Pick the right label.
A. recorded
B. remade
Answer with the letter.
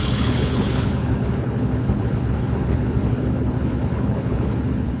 B